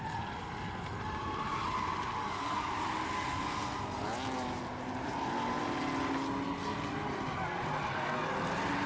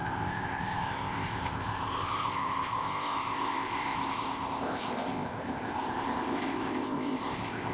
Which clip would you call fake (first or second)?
second